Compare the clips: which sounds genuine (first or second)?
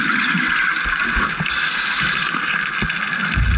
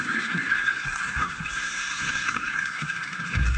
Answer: first